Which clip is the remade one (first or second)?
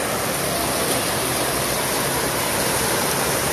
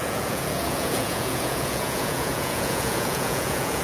second